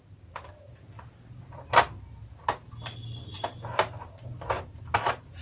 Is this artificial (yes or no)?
no